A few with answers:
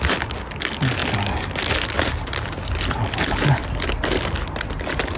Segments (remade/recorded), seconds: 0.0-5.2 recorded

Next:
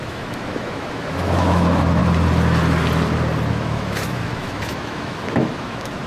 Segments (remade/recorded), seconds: 0.0-2.0 remade; 2.0-3.5 recorded; 3.5-6.1 remade

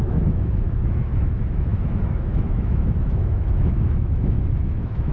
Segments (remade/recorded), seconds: 0.0-5.1 remade

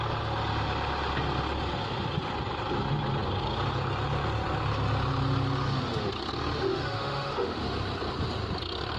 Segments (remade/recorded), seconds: 0.0-6.7 recorded; 6.7-7.6 remade; 7.6-9.0 recorded

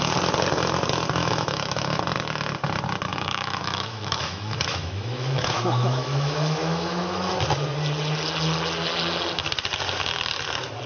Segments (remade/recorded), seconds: 0.0-1.2 recorded; 1.2-2.0 remade; 2.0-3.1 recorded; 3.1-7.3 remade; 7.3-10.9 recorded

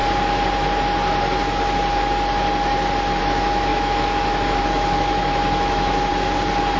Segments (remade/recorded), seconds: 0.0-3.2 recorded; 3.2-6.1 remade; 6.1-6.8 recorded

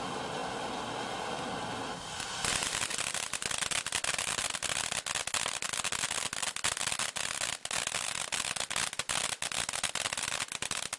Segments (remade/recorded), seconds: 0.0-11.0 recorded